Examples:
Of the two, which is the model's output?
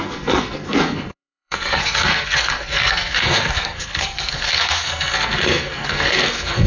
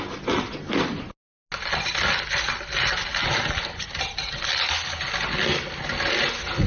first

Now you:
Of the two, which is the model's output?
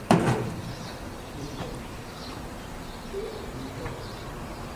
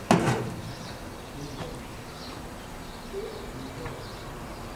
first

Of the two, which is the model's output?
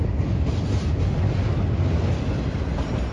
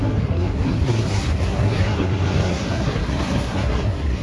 second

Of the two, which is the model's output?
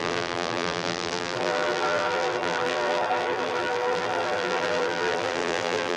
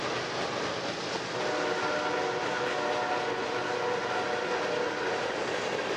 first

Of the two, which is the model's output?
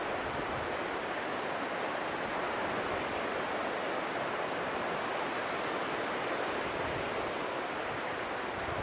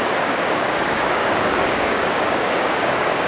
second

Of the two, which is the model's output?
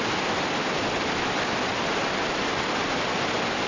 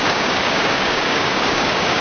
second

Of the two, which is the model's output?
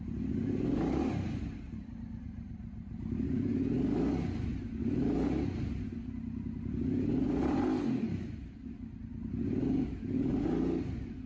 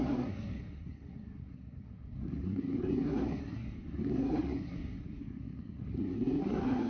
second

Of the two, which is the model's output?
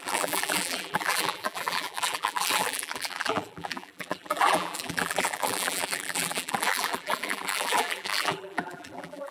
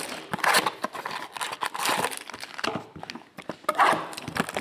first